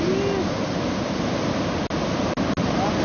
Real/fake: real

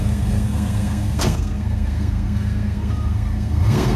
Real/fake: fake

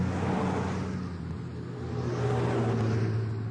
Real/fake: real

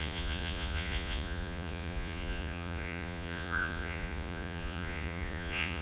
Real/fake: fake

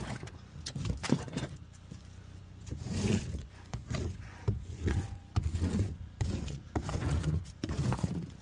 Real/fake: fake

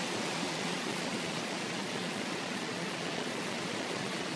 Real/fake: fake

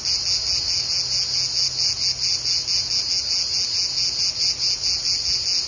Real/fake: real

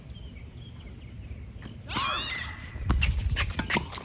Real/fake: real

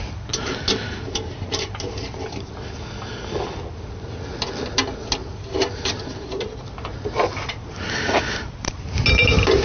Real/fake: real